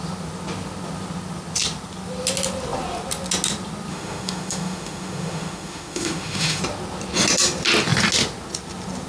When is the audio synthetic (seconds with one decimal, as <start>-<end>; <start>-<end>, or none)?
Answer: 3.9-6.6

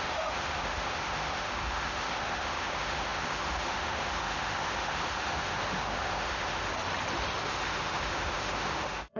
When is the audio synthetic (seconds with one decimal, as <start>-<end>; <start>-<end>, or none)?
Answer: 0.0-6.7; 7.4-9.2

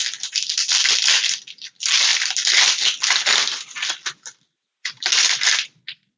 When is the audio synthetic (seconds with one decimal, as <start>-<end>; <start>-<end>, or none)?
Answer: none

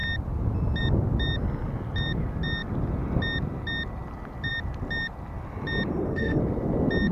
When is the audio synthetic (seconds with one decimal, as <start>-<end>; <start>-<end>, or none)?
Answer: 5.9-6.4

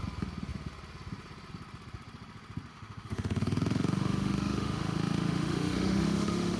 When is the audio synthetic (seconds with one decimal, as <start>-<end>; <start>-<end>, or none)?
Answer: 2.7-6.6

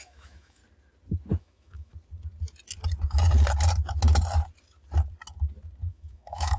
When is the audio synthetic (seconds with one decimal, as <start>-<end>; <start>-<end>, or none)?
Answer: 0.0-0.6; 1.4-1.9; 5.9-6.6